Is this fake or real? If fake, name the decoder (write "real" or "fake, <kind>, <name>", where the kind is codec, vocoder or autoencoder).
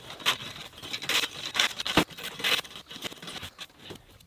real